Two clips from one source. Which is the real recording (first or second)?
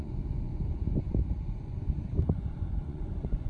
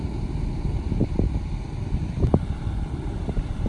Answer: second